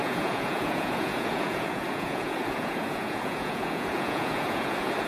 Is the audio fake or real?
fake